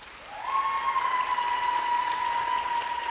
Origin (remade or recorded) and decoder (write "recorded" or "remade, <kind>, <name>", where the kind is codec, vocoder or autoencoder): recorded